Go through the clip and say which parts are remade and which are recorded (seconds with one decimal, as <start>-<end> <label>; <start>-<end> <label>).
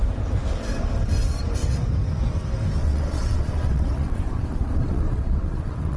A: 0.0-2.8 recorded; 2.8-6.0 remade